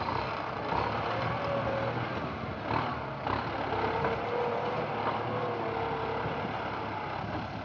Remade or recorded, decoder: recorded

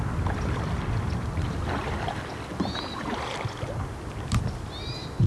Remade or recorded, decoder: recorded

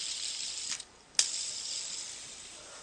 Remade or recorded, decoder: recorded